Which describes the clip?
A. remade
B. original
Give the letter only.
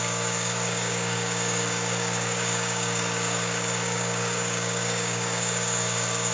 A